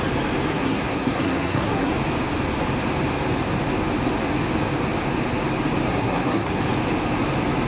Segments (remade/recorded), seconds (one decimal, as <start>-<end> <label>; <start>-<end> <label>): 0.0-0.5 recorded; 0.5-1.9 remade; 1.9-5.9 recorded; 5.9-6.6 remade; 6.6-7.7 recorded